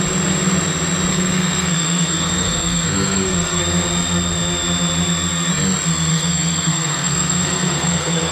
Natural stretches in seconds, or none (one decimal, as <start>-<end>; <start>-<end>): 0.0-1.1; 3.6-6.1